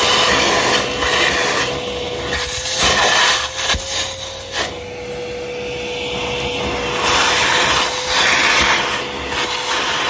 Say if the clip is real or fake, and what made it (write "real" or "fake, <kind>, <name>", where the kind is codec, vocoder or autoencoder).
real